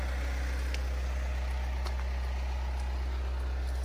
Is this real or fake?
real